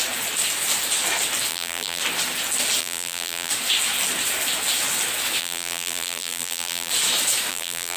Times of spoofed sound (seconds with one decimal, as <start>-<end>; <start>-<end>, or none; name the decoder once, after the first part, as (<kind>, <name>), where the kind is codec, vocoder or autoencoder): 1.5-2.0 (vocoder, BigVGAN v2); 2.8-3.5; 5.4-6.9; 7.5-8.0